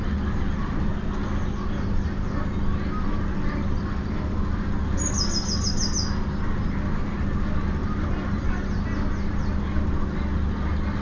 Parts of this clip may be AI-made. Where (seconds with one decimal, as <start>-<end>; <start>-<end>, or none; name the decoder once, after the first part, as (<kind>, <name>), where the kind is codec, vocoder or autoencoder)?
7.8-8.4 (vocoder, BigVGAN v2)